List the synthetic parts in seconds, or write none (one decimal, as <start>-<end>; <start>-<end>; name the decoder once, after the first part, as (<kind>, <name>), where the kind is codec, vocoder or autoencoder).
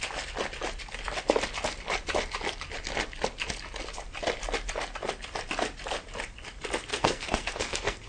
6.9-8.1 (codec, SNAC)